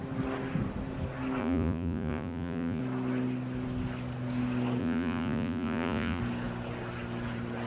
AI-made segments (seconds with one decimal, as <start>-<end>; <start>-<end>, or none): 1.4-2.8; 4.8-6.2